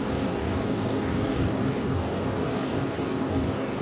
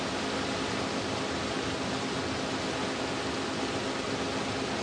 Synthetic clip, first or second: first